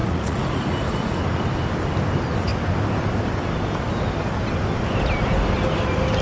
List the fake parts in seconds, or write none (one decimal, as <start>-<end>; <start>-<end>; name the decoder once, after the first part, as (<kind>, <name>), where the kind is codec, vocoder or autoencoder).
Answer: 0.0-1.2 (vocoder, Vocos)